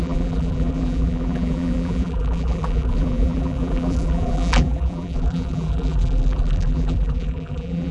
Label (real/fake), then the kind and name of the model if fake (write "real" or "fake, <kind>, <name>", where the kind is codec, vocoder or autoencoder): fake, vocoder, BigVGAN v2